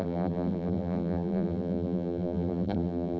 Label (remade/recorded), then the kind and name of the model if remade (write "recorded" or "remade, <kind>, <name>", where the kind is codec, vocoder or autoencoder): remade, vocoder, BigVGAN v2